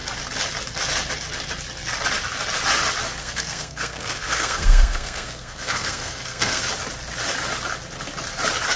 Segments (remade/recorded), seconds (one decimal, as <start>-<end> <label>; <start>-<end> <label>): 0.0-3.2 recorded; 3.2-6.7 remade; 6.7-8.8 recorded